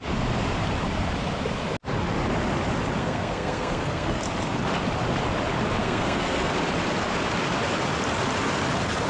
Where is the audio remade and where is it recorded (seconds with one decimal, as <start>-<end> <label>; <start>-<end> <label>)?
0.0-3.0 recorded; 3.0-4.2 remade; 4.2-5.8 recorded; 5.8-6.5 remade; 6.5-9.1 recorded